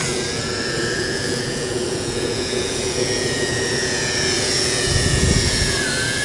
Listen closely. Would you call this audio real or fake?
fake